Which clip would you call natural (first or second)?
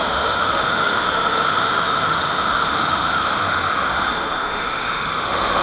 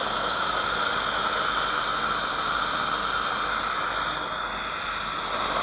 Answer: second